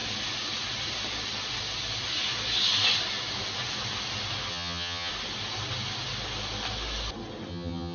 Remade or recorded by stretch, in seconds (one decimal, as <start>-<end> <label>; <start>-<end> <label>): 0.0-4.5 recorded; 4.5-5.1 remade; 5.1-7.5 recorded; 7.5-7.9 remade

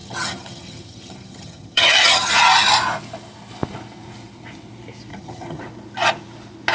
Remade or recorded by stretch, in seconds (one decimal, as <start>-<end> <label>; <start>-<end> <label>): 0.0-2.3 remade; 2.3-5.1 recorded; 5.1-5.6 remade; 5.6-6.7 recorded

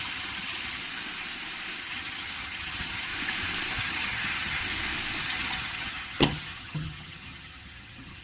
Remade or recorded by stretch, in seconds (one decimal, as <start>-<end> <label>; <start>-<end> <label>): 0.0-0.8 remade; 0.8-1.8 recorded; 1.8-3.1 remade; 3.1-3.8 recorded; 3.8-4.6 remade; 4.6-5.2 recorded; 5.2-8.2 remade

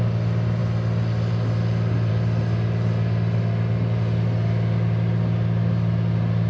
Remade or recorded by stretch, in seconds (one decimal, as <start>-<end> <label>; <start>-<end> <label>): 0.0-6.5 recorded